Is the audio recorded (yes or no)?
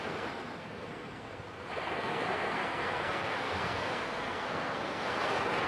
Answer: no